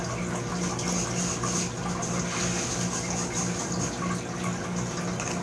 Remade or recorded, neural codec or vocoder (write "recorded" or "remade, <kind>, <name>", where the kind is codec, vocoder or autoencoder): recorded